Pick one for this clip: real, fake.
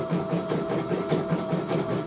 real